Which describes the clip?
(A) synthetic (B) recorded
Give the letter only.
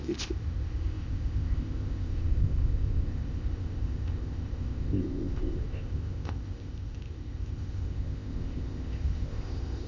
A